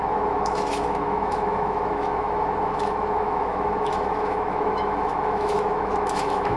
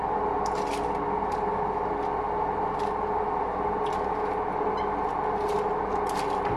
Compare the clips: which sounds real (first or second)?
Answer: second